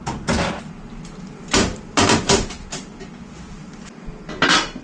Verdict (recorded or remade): recorded